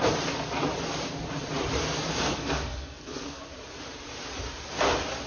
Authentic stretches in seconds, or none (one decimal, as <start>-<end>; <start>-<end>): 0.0-2.1; 3.4-5.3